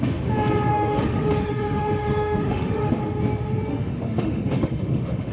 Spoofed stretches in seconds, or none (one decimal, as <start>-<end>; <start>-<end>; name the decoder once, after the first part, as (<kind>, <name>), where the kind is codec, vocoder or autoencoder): 0.7-2.9 (autoencoder, DAC-VAE); 3.7-5.3